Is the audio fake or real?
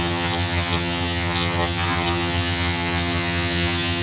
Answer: fake